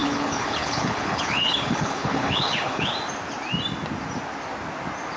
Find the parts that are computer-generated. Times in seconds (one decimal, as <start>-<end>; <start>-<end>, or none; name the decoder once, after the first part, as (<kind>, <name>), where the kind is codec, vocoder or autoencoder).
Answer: 0.0-2.9 (codec, HILCodec)